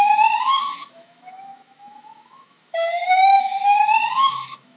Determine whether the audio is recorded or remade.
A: remade